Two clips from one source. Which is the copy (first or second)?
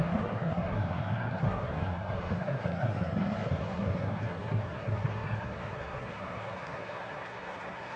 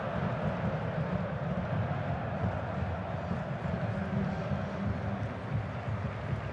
first